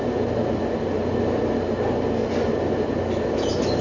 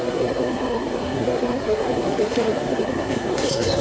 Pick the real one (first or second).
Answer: first